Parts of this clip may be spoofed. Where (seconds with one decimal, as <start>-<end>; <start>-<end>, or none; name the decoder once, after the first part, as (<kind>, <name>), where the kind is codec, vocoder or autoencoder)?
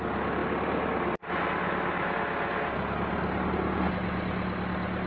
none